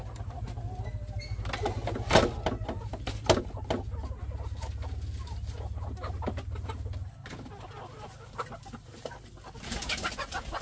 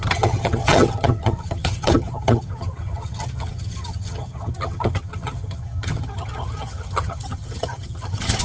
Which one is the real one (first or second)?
first